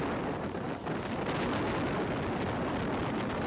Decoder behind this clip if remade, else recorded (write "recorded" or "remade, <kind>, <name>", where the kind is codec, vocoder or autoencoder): recorded